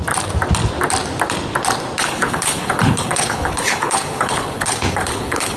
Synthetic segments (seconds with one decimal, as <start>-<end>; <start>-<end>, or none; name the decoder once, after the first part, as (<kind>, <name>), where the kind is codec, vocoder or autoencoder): 2.0-5.6 (codec, HILCodec)